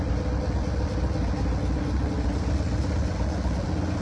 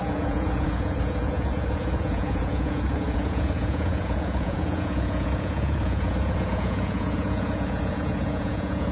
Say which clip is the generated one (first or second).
second